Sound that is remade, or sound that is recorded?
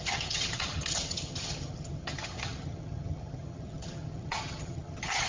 remade